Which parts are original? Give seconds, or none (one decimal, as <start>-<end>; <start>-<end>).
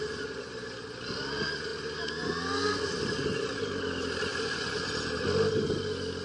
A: 0.0-4.3; 4.9-6.2